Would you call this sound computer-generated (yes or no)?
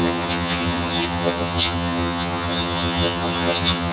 yes